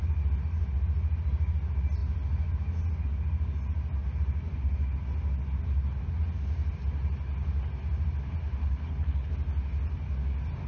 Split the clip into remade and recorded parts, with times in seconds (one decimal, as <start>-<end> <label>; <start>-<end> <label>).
0.0-8.6 recorded; 8.6-9.3 remade; 9.3-10.7 recorded